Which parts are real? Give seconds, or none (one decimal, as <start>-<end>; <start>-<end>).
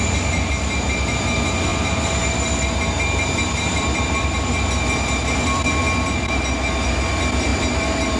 0.0-8.2